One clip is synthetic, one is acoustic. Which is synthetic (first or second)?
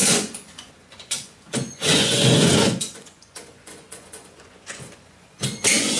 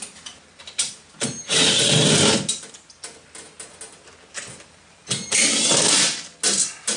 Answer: first